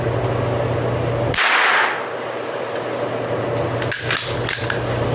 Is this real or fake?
real